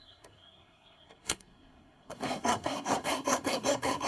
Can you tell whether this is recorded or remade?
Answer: remade